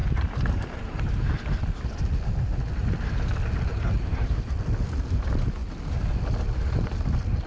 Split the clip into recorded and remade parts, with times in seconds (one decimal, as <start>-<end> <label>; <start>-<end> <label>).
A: 0.0-1.3 remade; 1.3-3.7 recorded; 3.7-4.5 remade; 4.5-7.5 recorded